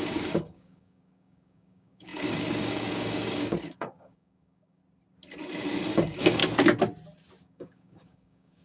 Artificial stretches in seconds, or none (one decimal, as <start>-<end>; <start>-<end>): 0.0-4.8; 5.9-6.4; 7.4-8.6